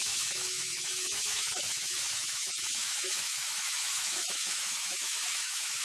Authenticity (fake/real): fake